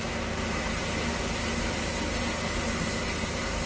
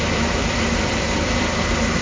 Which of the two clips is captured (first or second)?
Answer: first